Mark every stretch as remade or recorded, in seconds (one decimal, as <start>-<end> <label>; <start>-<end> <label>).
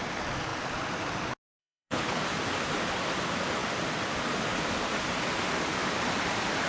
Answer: 0.0-1.6 recorded; 1.6-2.2 remade; 2.2-6.7 recorded